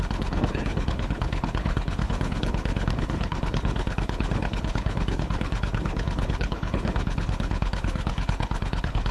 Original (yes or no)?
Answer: no